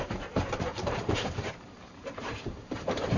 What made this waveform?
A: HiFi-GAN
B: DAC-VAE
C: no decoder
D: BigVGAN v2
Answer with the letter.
D